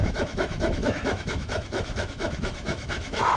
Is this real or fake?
fake